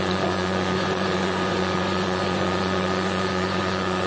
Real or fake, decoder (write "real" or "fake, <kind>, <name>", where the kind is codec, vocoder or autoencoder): fake, vocoder, Vocos